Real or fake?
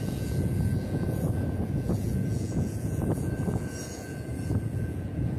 fake